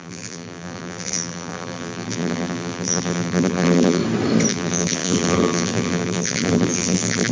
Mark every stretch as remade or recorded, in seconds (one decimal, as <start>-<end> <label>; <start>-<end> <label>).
0.0-4.0 remade; 4.0-4.5 recorded; 4.5-7.3 remade